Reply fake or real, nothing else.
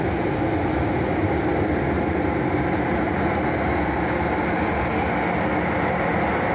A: real